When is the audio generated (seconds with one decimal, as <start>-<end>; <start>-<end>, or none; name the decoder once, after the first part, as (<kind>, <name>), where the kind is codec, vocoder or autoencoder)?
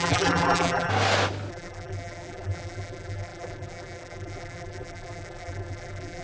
0.0-0.9 (vocoder, BigVGAN v2); 1.5-6.2